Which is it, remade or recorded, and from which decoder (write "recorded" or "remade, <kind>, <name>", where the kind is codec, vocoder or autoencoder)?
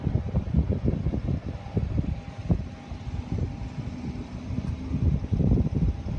recorded